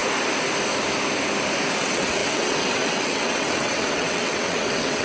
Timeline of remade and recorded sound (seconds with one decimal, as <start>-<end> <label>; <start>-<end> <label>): 0.0-1.8 recorded; 1.8-5.0 remade